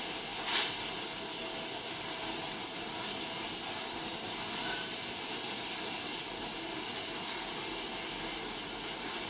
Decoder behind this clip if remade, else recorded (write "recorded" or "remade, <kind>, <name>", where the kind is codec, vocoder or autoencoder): recorded